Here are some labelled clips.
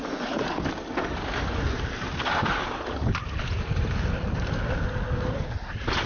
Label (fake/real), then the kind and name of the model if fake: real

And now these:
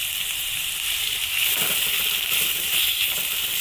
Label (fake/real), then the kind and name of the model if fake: fake, vocoder, BigVGAN v2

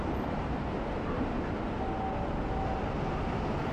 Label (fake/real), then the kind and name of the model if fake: real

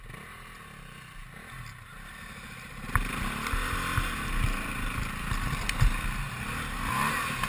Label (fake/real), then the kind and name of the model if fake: real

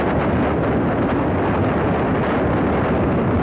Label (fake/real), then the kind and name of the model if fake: real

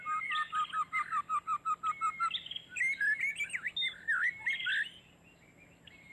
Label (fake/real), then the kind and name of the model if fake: real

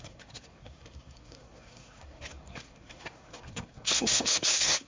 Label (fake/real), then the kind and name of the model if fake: fake, codec, SNAC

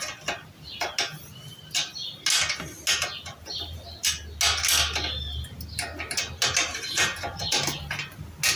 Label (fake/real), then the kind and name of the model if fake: real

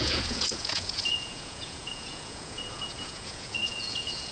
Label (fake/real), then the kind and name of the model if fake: fake, vocoder, Vocos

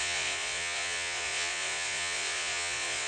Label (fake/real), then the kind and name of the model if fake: fake, vocoder, Vocos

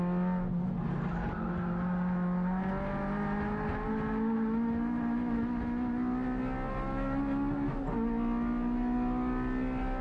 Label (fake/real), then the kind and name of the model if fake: real